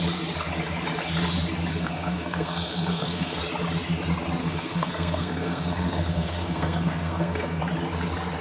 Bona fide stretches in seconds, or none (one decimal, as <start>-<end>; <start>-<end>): 0.0-1.7; 3.4-4.4; 7.6-8.4